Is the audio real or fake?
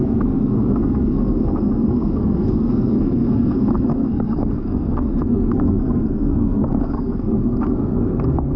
fake